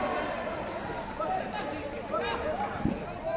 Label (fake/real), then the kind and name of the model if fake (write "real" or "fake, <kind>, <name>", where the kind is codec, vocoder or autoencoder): real